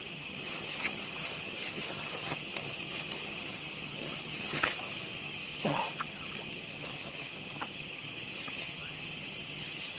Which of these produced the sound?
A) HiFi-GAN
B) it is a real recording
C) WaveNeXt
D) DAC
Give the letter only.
A